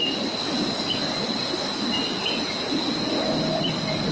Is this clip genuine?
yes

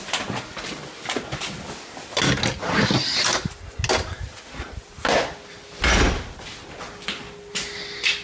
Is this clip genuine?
yes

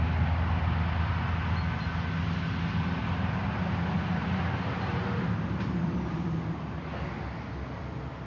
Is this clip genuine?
yes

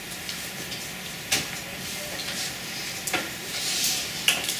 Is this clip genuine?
yes